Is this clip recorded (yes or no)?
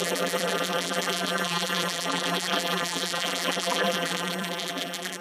no